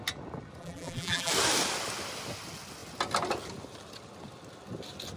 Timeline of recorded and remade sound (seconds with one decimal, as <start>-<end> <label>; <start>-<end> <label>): 0.0-0.6 recorded; 0.6-1.3 remade; 1.3-5.2 recorded